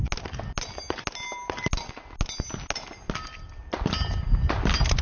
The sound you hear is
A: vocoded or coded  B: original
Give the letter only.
B